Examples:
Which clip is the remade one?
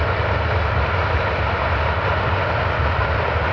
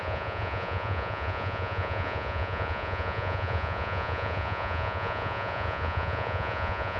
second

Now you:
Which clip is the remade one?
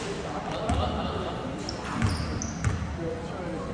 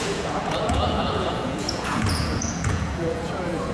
second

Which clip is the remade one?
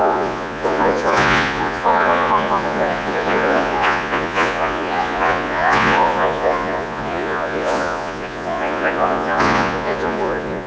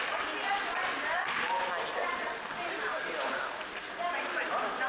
first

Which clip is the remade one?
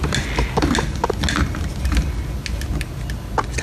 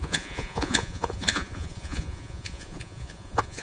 second